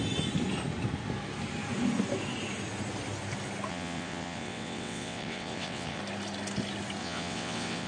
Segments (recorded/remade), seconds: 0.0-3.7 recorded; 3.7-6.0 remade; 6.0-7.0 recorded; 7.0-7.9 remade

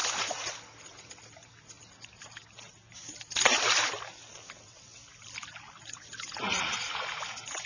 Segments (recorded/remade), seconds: 0.0-4.6 recorded; 4.6-5.0 remade; 5.0-7.7 recorded

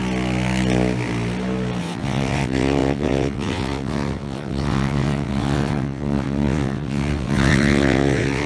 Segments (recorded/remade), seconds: 0.0-1.8 recorded; 1.8-8.5 remade

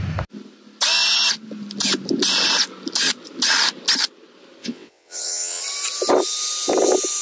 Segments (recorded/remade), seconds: 0.0-4.6 recorded; 4.6-5.6 remade; 5.6-7.2 recorded

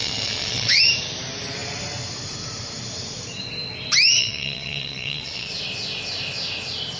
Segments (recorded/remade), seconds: 0.0-0.8 remade; 0.8-4.2 recorded; 4.2-5.5 remade; 5.5-7.0 recorded

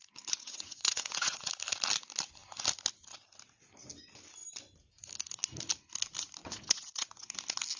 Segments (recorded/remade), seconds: 0.0-0.4 recorded; 0.4-1.5 remade; 1.5-6.4 recorded; 6.4-7.3 remade; 7.3-7.8 recorded

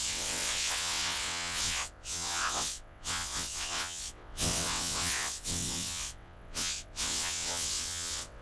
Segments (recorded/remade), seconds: 0.0-8.4 remade